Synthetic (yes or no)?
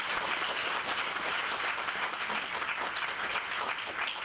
no